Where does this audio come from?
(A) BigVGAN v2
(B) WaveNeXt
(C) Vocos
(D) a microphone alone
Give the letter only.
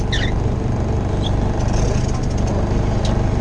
D